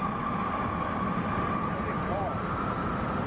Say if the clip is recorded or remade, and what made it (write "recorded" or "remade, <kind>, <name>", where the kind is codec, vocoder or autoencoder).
recorded